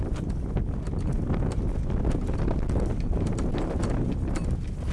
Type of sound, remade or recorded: recorded